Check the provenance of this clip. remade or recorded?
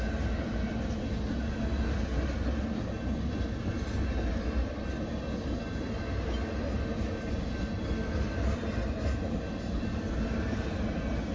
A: recorded